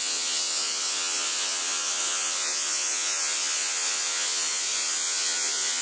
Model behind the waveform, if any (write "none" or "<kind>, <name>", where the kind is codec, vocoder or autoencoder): vocoder, Vocos